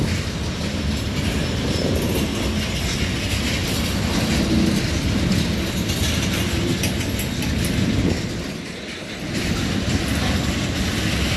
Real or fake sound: real